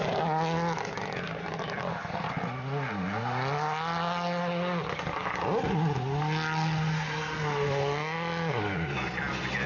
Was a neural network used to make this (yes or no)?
no